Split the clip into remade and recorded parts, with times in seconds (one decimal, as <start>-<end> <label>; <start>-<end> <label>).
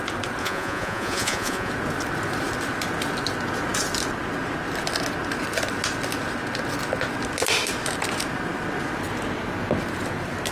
0.0-0.4 recorded; 0.4-1.7 remade; 1.7-10.5 recorded